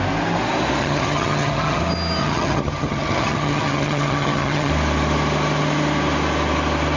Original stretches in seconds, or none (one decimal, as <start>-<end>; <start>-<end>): 0.0-0.8; 1.8-2.2; 4.7-7.0